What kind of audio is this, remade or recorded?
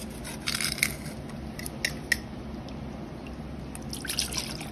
recorded